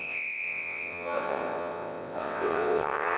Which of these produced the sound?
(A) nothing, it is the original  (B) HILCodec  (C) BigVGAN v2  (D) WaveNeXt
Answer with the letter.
D